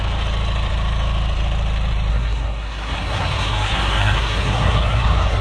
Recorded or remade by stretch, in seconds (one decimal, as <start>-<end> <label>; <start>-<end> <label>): 0.0-2.1 recorded; 2.1-5.4 remade